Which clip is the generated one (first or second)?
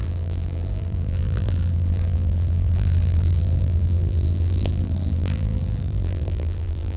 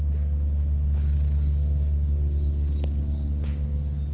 first